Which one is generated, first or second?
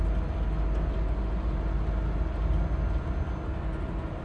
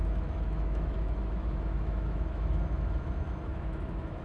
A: second